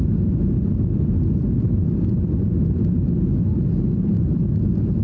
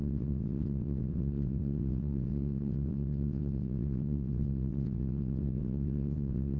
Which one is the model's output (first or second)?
second